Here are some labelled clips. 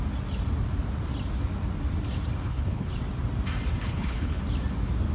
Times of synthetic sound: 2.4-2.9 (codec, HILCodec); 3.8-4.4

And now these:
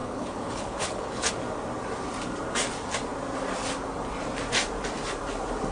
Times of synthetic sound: 0.0-1.3 (codec, HILCodec)